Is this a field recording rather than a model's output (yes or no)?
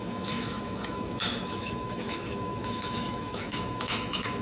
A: no